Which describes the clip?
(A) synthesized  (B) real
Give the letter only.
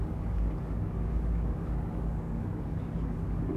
A